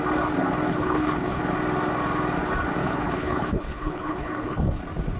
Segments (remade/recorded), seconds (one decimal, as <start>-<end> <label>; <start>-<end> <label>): 0.0-0.7 recorded; 0.7-1.4 remade; 1.4-2.8 recorded; 2.8-4.8 remade; 4.8-5.2 recorded